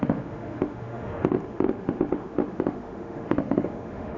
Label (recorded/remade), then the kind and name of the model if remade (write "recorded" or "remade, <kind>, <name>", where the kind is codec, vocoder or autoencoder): remade, autoencoder, DAC-VAE